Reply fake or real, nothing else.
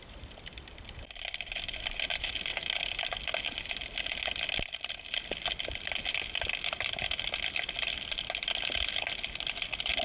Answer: real